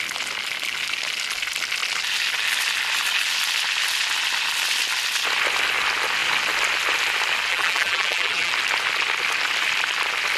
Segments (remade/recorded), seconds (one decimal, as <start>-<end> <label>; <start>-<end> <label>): 0.0-7.5 recorded; 7.5-8.5 remade; 8.5-10.4 recorded

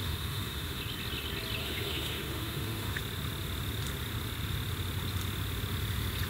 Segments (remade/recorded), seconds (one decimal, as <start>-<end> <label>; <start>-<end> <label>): 0.0-0.8 remade; 0.8-1.6 recorded; 1.6-3.0 remade; 3.0-6.3 recorded

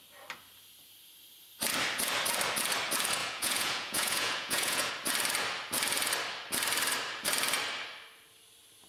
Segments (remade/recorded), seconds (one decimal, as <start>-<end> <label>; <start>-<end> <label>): 0.0-3.2 recorded; 3.2-4.9 remade; 4.9-8.9 recorded

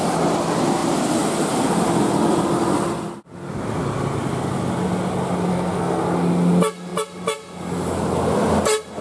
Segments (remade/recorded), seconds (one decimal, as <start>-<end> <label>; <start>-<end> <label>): 0.0-5.5 recorded; 5.5-6.0 remade; 6.0-9.0 recorded